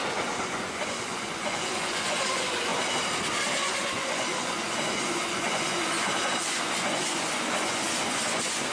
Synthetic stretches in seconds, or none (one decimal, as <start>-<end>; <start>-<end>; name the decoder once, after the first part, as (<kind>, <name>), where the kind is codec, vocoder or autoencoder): 0.0-2.7 (vocoder, Vocos); 3.6-8.7